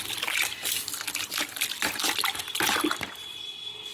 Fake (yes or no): yes